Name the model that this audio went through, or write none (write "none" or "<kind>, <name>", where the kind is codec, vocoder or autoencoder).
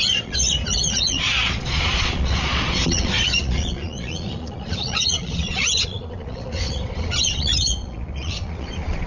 vocoder, Vocos